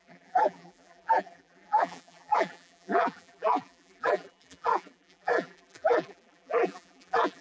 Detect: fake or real fake